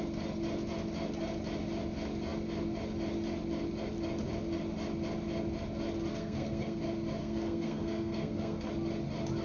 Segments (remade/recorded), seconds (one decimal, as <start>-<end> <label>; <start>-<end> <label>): 0.0-6.1 recorded; 6.1-6.8 remade; 6.8-7.2 recorded; 7.2-8.7 remade; 8.7-9.4 recorded